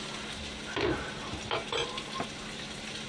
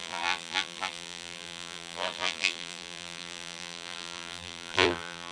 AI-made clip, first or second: second